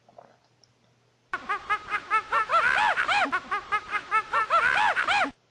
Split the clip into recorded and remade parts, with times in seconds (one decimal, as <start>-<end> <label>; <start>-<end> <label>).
0.0-5.5 recorded